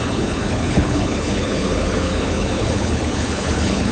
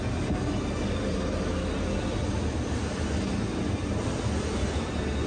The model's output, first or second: first